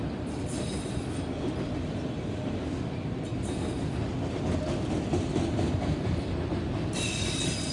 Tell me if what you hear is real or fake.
real